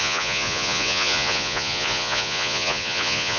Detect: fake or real fake